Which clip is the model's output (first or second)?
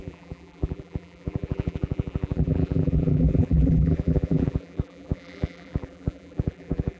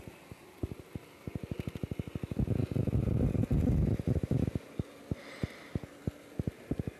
first